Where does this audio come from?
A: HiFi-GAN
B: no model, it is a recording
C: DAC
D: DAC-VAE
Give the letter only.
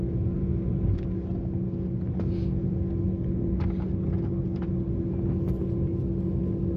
B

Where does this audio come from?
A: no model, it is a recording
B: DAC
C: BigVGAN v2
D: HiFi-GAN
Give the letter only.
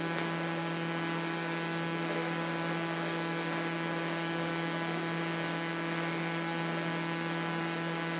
B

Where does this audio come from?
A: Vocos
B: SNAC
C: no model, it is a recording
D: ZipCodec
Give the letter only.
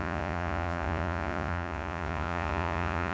A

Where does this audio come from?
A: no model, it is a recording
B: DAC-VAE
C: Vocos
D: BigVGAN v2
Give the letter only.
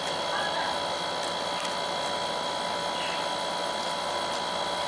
A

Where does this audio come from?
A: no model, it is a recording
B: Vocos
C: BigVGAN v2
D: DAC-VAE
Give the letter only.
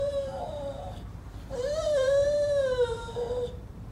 C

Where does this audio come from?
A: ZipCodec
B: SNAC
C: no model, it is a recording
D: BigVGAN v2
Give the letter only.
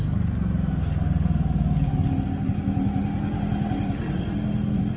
C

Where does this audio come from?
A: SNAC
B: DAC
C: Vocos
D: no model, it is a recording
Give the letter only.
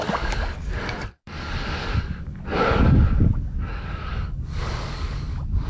B